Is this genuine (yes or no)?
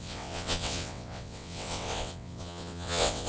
no